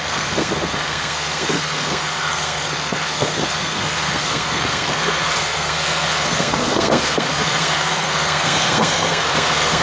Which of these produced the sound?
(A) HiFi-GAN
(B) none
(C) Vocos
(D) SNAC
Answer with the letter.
D